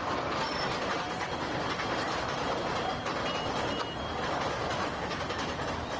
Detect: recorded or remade recorded